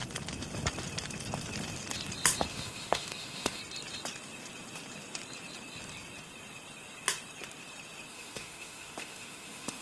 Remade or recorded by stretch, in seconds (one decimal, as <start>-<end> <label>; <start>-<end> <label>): 0.0-2.5 recorded; 2.5-3.6 remade; 3.6-8.1 recorded; 8.1-9.8 remade